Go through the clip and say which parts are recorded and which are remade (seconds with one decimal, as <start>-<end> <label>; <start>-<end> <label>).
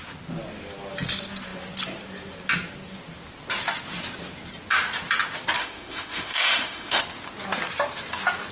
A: 0.0-5.6 recorded; 5.6-7.0 remade; 7.0-8.5 recorded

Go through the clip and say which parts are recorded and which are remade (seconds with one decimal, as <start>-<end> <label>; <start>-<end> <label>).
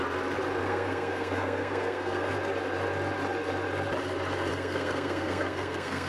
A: 0.0-0.6 recorded; 0.6-2.3 remade; 2.3-4.5 recorded; 4.5-6.1 remade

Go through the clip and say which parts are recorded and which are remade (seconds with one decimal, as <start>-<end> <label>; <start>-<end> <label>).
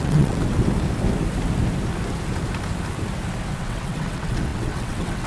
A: 0.0-0.4 remade; 0.4-3.6 recorded; 3.6-5.3 remade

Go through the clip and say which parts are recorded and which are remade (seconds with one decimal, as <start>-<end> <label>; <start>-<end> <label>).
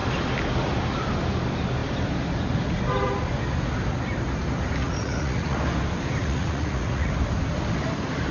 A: 0.0-4.8 recorded; 4.8-5.6 remade; 5.6-6.2 recorded; 6.2-7.1 remade; 7.1-8.3 recorded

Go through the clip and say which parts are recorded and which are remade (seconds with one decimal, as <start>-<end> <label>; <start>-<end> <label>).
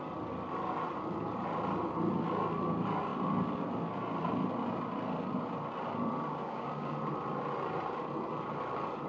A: 0.0-6.3 recorded; 6.3-6.9 remade; 6.9-9.1 recorded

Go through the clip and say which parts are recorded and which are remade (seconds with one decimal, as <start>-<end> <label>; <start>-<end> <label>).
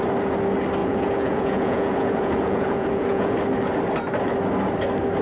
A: 0.0-0.8 recorded; 0.8-3.3 remade; 3.3-5.2 recorded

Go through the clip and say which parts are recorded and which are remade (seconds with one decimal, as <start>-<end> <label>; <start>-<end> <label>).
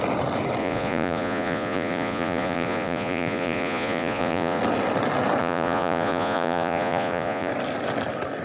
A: 0.0-0.6 recorded; 0.6-4.6 remade; 4.6-5.4 recorded; 5.4-7.5 remade; 7.5-8.4 recorded